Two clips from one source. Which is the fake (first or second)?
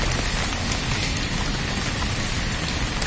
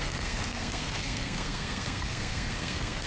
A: second